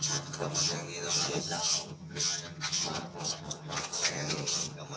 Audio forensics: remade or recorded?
remade